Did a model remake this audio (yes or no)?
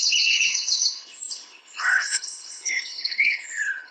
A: yes